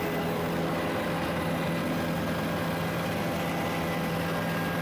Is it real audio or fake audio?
real